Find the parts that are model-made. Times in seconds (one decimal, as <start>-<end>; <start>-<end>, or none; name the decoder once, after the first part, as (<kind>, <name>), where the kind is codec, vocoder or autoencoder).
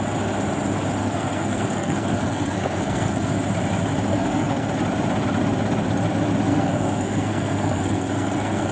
1.0-3.3 (codec, SNAC); 4.1-4.7; 6.5-8.7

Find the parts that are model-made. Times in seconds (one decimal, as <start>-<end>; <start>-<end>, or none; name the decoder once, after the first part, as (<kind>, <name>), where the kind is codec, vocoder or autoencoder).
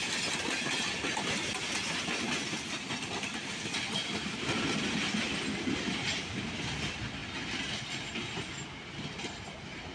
none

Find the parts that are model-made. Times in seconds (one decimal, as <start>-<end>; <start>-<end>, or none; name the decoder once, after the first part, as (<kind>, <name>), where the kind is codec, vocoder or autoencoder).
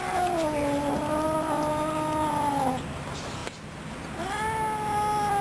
1.7-2.3 (vocoder, BigVGAN v2)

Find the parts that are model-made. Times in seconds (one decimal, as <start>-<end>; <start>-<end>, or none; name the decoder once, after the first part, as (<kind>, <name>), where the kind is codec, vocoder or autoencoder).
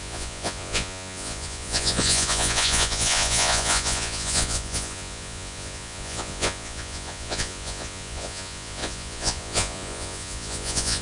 0.0-11.0 (vocoder, Vocos)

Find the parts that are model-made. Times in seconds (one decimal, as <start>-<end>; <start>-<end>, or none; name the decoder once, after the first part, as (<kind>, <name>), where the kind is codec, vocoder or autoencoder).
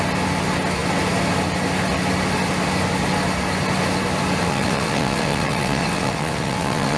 4.4-7.0 (vocoder, WaveNeXt)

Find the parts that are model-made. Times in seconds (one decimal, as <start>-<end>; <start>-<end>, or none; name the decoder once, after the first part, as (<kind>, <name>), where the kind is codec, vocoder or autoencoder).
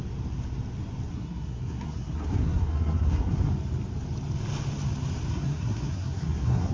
1.1-3.5 (codec, SNAC); 5.3-6.7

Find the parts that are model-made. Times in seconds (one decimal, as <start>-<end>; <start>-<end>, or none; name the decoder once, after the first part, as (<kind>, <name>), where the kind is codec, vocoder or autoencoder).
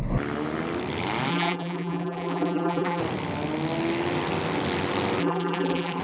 1.3-3.0 (vocoder, BigVGAN v2); 5.2-6.0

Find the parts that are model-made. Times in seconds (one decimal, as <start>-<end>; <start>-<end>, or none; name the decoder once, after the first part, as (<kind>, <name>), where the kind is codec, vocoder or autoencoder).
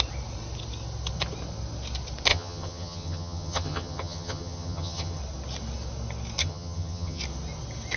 2.3-5.2 (vocoder, HiFi-GAN); 6.4-7.2